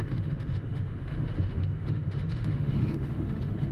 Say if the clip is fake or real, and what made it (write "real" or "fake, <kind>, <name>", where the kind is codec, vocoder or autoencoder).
fake, autoencoder, DAC-VAE